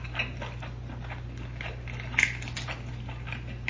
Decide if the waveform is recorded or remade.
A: recorded